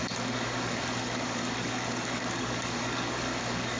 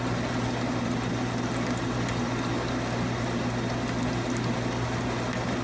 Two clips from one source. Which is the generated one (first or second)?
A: first